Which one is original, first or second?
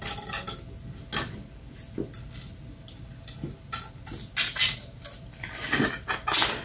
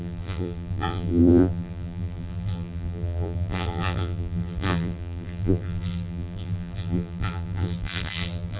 first